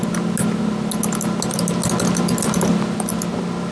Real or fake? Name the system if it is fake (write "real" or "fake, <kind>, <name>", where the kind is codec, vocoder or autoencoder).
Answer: real